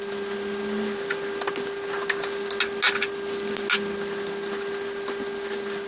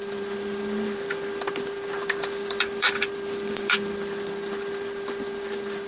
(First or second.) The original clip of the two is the first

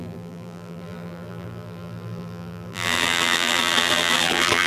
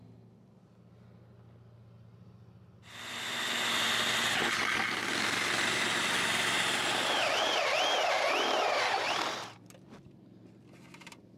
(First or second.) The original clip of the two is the second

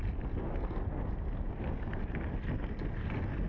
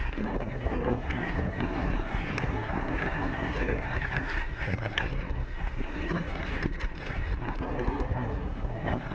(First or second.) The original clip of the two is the first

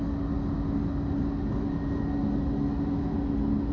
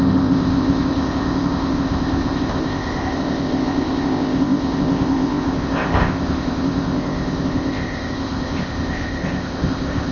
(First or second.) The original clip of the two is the first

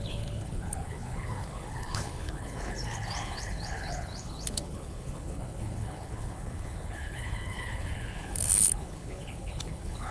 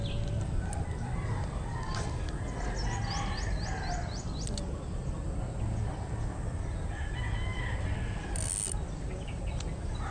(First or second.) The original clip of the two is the second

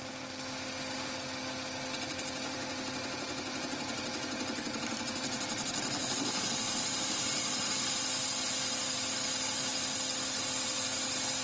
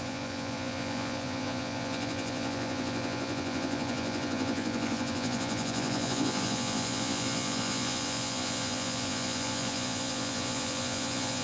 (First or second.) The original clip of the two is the first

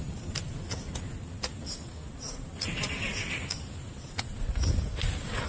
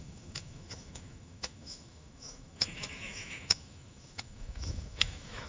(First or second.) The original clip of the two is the first